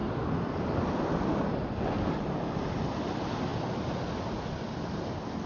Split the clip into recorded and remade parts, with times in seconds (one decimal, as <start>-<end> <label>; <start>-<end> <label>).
0.0-5.5 recorded